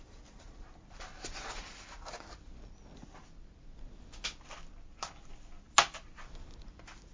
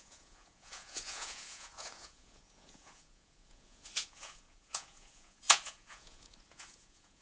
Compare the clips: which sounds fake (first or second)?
second